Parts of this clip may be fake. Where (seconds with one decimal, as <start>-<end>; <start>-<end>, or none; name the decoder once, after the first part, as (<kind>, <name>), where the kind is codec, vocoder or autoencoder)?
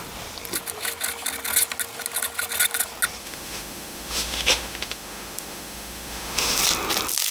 3.2-6.6 (autoencoder, DAC-VAE)